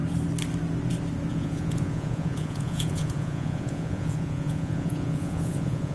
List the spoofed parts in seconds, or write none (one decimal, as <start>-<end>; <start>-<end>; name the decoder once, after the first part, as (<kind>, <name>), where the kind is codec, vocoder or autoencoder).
1.3-5.9 (vocoder, Vocos)